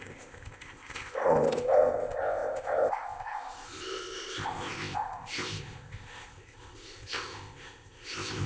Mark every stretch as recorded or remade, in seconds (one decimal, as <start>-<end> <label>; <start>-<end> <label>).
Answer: 0.0-8.5 remade